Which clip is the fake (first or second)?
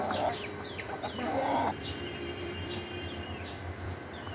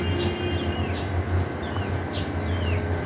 first